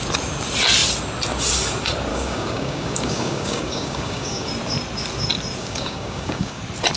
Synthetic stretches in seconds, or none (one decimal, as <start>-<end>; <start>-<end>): 2.1-4.5; 5.6-6.6